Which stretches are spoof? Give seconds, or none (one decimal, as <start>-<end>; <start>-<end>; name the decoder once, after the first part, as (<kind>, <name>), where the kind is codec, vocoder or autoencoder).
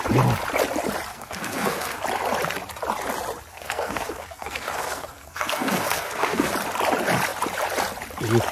1.1-2.0 (codec, SNAC); 3.5-6.5